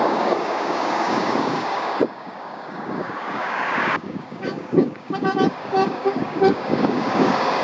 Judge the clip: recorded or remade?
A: remade